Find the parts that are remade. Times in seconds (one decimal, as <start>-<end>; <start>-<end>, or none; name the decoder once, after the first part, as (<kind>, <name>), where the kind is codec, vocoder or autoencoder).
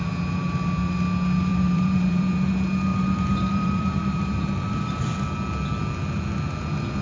1.5-2.5 (vocoder, BigVGAN v2); 2.9-5.0